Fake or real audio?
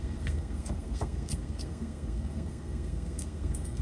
fake